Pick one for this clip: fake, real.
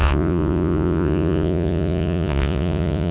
fake